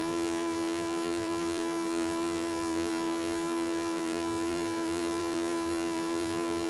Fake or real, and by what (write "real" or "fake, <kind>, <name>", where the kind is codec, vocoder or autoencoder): fake, vocoder, BigVGAN v2